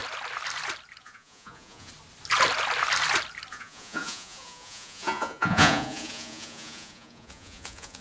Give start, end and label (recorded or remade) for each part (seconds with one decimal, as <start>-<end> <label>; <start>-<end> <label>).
0.0-1.0 recorded; 1.0-1.9 remade; 1.9-3.5 recorded; 3.5-8.0 remade